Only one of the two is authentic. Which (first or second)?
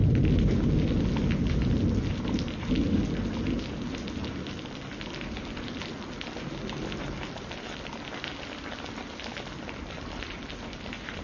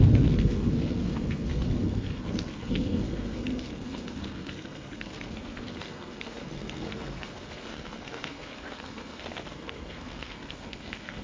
first